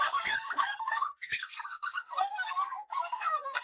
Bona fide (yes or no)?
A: no